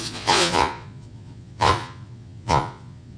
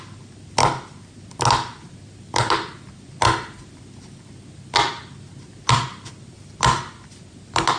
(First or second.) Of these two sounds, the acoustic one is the second